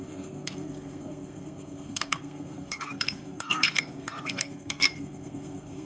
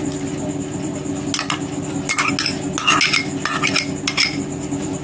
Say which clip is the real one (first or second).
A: second